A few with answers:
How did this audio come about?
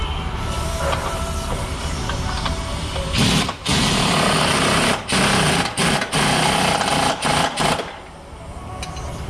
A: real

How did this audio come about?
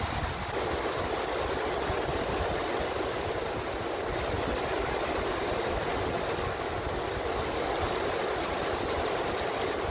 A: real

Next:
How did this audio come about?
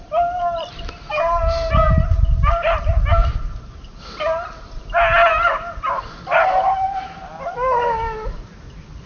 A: real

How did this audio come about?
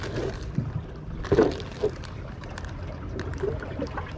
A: real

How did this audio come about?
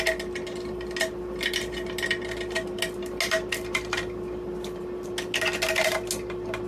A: real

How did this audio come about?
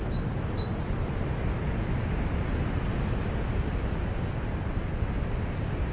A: real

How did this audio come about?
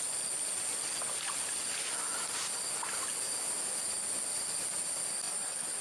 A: real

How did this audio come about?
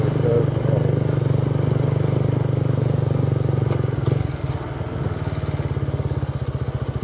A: real